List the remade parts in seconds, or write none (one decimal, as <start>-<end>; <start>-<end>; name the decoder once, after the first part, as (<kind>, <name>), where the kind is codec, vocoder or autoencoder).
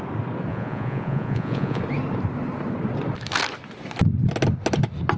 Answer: 0.5-1.8 (vocoder, Vocos)